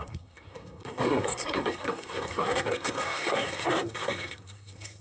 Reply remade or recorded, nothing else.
remade